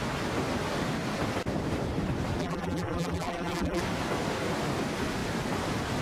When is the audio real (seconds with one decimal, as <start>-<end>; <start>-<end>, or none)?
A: 0.0-2.4; 3.8-6.0